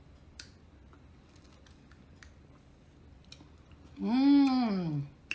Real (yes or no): yes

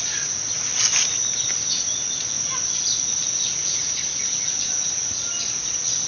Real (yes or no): yes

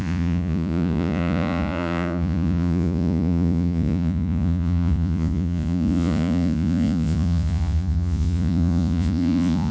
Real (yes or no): no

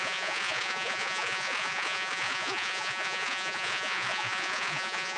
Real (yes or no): no